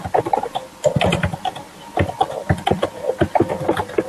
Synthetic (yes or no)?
no